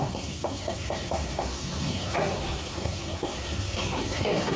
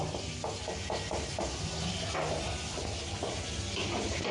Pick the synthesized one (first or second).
first